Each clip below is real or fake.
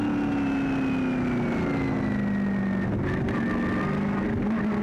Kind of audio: real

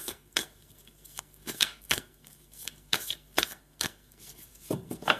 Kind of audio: fake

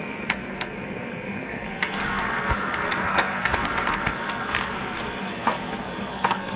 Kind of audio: fake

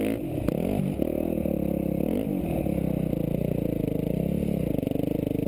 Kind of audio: real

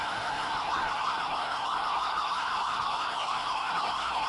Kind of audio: fake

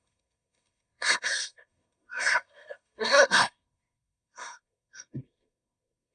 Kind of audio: fake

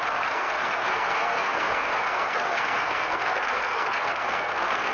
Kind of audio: fake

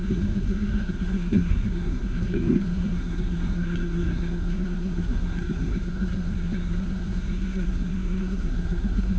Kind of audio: fake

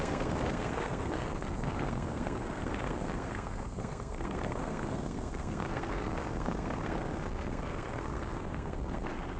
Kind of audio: fake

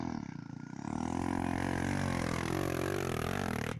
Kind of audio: real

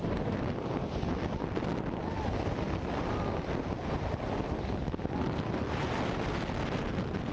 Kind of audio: real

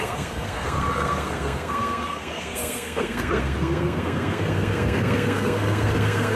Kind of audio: fake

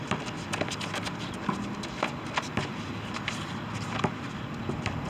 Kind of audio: real